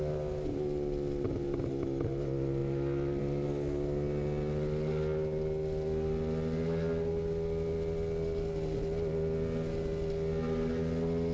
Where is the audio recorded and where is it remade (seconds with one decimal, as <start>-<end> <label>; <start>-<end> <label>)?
0.0-11.3 recorded